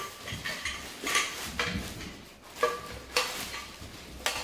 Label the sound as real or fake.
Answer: real